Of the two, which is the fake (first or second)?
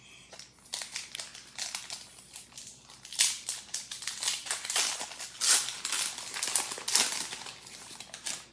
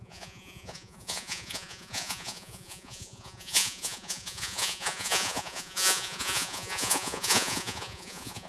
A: second